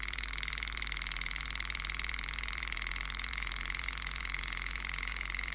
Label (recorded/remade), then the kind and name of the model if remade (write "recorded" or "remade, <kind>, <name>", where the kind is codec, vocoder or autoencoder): remade, vocoder, BigVGAN v2